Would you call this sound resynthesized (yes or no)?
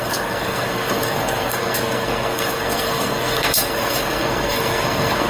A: yes